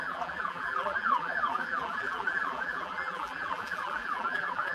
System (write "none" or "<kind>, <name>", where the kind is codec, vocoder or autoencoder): vocoder, BigVGAN v2